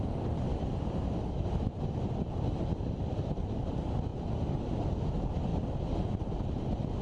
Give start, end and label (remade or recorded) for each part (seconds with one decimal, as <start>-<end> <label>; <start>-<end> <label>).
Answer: 0.0-0.5 recorded; 0.5-1.5 remade; 1.5-7.0 recorded